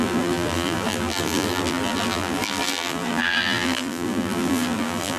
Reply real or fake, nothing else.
fake